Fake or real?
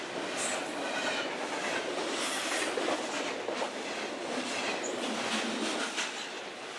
real